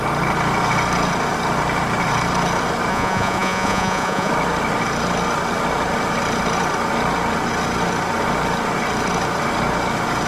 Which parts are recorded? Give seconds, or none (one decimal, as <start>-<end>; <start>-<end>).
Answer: 0.0-2.9; 4.3-10.3